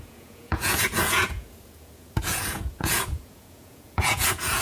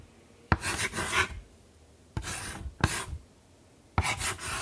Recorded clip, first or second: second